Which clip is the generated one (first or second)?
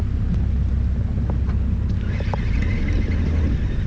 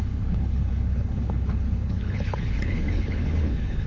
second